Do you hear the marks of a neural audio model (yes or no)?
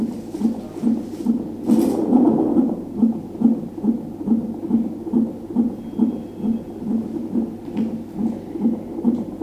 no